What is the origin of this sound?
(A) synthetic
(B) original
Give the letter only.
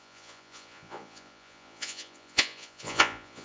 A